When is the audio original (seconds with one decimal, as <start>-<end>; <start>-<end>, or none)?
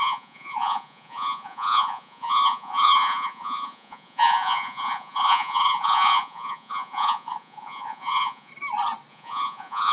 8.5-9.1